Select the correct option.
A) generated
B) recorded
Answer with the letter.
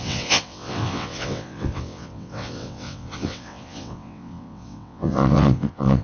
A